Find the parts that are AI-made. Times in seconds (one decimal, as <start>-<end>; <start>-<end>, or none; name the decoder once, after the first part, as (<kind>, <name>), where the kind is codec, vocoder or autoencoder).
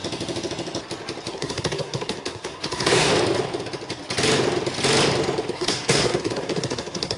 1.3-3.1 (codec, SNAC); 5.5-7.2